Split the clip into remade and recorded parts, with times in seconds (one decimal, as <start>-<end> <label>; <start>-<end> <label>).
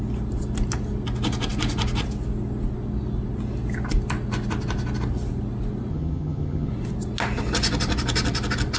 0.0-5.9 recorded; 5.9-6.7 remade; 6.7-8.8 recorded